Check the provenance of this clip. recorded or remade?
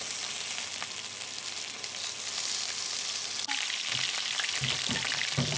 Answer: recorded